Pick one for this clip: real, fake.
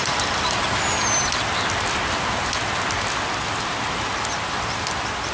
real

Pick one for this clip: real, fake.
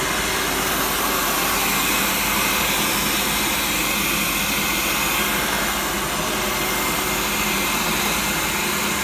real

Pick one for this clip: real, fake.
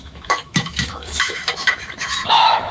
fake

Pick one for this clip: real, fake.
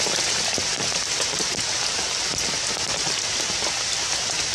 real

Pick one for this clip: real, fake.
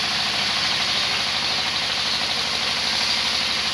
real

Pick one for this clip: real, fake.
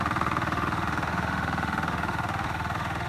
fake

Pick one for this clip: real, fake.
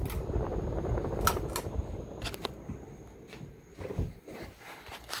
real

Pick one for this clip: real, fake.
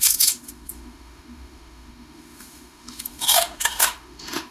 fake